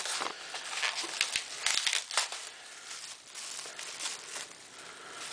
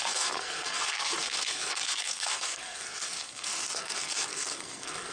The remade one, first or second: second